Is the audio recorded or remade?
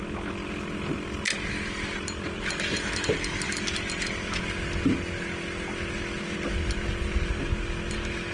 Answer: recorded